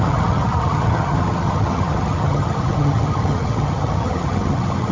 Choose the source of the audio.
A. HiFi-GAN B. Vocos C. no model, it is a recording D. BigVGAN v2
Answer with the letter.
A